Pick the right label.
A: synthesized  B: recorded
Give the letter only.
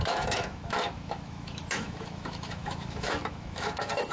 A